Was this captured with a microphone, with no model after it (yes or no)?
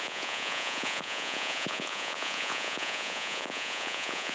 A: no